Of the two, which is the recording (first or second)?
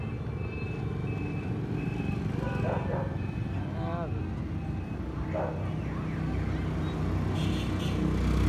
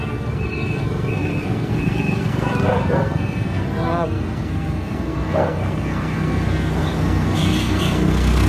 first